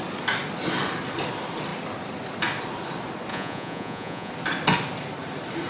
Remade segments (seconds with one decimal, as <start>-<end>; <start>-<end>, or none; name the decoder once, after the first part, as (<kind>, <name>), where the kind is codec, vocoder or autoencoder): 3.3-4.3 (vocoder, Vocos)